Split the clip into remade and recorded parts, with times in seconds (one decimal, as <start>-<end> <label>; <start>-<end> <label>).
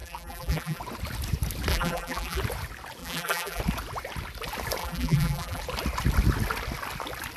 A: 0.0-0.8 remade; 0.8-1.7 recorded; 1.7-2.4 remade; 2.4-3.0 recorded; 3.0-3.6 remade; 3.6-4.8 recorded; 4.8-5.6 remade; 5.6-7.4 recorded